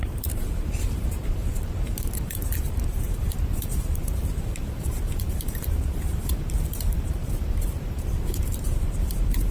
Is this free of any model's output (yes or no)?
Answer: no